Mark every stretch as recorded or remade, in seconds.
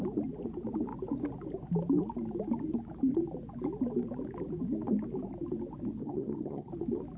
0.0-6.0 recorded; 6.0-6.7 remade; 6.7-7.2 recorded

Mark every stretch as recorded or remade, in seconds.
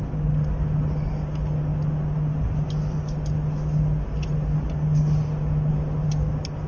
0.0-6.7 recorded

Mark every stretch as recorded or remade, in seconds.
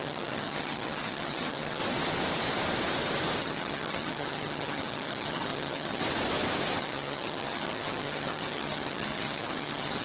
0.0-1.8 remade; 1.8-3.4 recorded; 3.4-6.0 remade; 6.0-6.8 recorded; 6.8-10.0 remade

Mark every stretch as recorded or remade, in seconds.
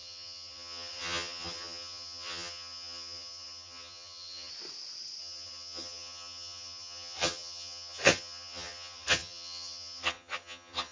0.0-4.5 remade; 4.5-5.2 recorded; 5.2-10.9 remade